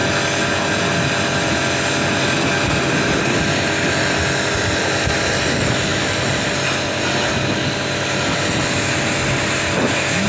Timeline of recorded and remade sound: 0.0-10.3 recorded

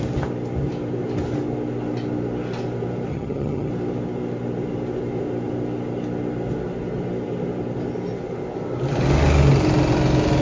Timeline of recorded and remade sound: 0.0-3.1 recorded; 3.1-3.7 remade; 3.7-10.4 recorded

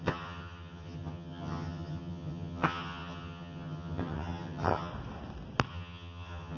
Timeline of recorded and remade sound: 0.0-4.9 remade; 4.9-5.7 recorded; 5.7-6.6 remade

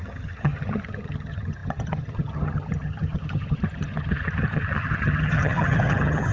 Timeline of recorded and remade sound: 0.0-6.3 remade

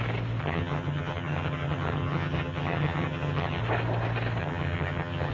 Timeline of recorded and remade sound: 0.0-0.4 recorded; 0.4-3.6 remade; 3.6-4.4 recorded; 4.4-5.3 remade